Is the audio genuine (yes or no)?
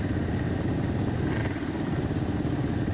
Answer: yes